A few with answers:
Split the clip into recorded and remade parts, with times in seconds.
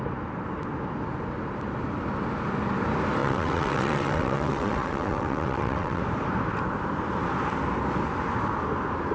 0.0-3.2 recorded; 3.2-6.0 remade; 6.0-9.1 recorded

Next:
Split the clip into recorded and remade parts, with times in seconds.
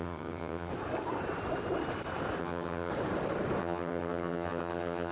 0.0-0.7 remade; 0.7-2.4 recorded; 2.4-2.9 remade; 2.9-3.6 recorded; 3.6-5.1 remade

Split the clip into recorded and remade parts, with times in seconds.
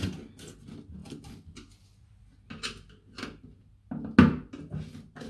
0.0-5.3 recorded